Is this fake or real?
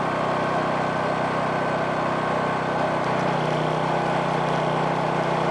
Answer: real